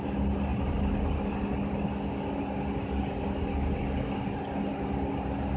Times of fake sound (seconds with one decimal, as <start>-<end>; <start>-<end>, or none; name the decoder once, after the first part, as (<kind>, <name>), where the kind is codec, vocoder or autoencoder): none